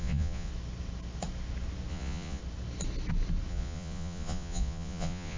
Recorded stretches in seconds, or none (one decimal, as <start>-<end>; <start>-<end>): 0.5-1.9; 2.4-3.5